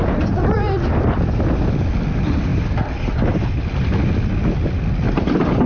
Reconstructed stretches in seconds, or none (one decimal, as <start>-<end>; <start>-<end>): none